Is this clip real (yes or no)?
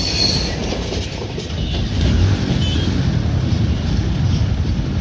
yes